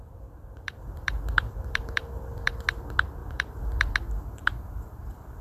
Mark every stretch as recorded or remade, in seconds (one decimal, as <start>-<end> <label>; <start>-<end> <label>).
0.0-0.4 recorded; 0.4-2.6 remade; 2.6-3.2 recorded; 3.2-3.9 remade; 3.9-4.4 recorded; 4.4-5.4 remade